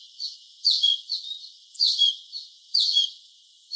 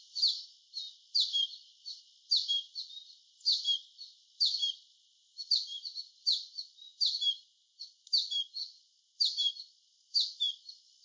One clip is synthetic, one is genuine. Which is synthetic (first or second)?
first